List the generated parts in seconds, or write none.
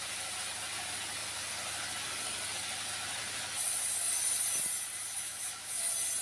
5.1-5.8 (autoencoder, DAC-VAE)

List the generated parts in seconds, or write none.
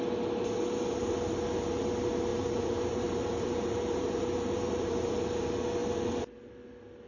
2.3-5.1 (vocoder, BigVGAN v2)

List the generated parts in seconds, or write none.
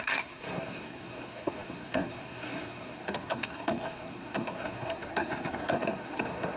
0.0-6.6 (codec, SNAC)